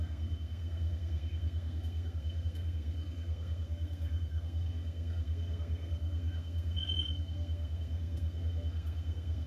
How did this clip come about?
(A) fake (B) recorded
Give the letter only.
A